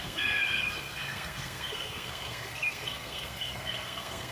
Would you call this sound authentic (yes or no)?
no